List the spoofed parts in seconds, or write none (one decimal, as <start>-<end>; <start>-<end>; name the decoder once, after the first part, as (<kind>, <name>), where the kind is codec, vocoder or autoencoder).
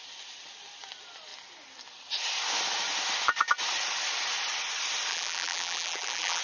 5.1-6.4 (vocoder, BigVGAN v2)